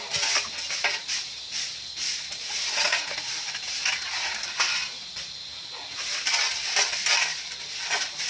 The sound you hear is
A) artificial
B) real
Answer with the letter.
B